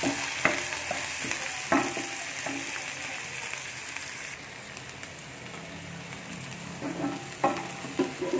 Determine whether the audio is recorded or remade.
recorded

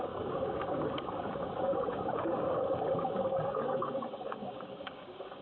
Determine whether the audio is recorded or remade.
remade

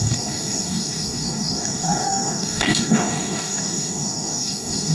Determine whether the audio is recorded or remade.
remade